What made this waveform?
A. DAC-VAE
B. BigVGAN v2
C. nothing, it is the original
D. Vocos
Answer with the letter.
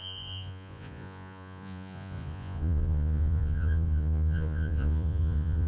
D